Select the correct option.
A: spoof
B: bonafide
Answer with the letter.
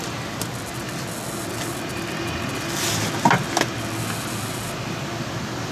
B